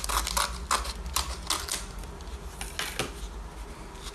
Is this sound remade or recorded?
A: recorded